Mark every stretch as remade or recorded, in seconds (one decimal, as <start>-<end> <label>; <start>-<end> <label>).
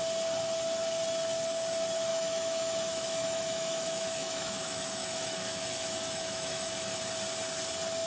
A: 0.0-2.1 recorded; 2.1-7.0 remade; 7.0-8.1 recorded